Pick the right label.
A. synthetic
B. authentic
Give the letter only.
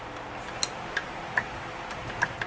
B